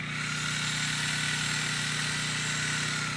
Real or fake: real